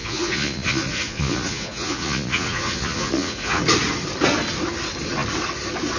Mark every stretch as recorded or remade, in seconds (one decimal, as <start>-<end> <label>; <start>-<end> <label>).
0.0-3.6 remade; 3.6-6.0 recorded

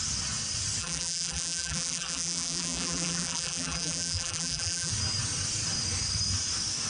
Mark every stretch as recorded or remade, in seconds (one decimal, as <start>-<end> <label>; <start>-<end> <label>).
0.0-0.8 recorded; 0.8-4.9 remade; 4.9-6.9 recorded

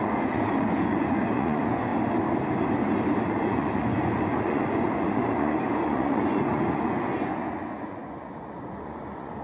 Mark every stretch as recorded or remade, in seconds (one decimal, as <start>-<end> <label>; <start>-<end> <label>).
0.0-1.9 remade; 1.9-3.3 recorded; 3.3-9.4 remade

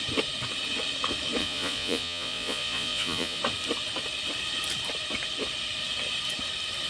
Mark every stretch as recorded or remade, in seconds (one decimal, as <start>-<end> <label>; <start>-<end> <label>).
0.0-1.4 recorded; 1.4-3.4 remade; 3.4-6.9 recorded

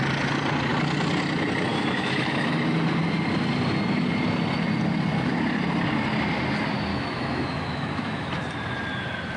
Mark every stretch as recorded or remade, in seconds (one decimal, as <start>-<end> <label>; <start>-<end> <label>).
0.0-1.7 recorded; 1.7-2.5 remade; 2.5-6.9 recorded; 6.9-8.3 remade; 8.3-9.4 recorded

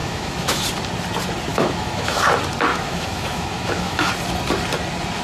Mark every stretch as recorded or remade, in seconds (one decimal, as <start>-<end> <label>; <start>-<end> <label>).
0.0-0.6 remade; 0.6-1.5 recorded; 1.5-2.2 remade; 2.2-2.7 recorded; 2.7-4.1 remade; 4.1-5.2 recorded